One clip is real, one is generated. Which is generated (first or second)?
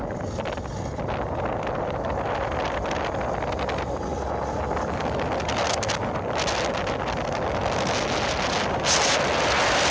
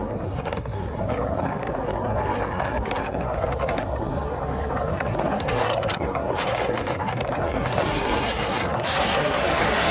second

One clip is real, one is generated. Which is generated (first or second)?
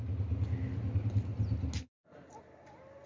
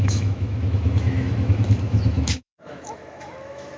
second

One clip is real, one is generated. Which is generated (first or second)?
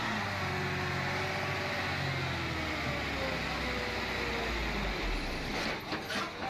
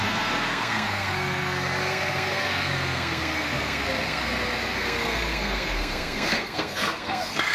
second